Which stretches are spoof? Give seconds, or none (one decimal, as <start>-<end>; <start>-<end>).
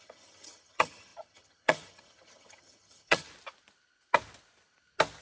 0.0-3.3